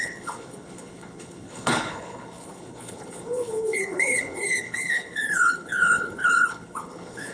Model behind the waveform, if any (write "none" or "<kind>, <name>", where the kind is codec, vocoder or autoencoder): codec, HILCodec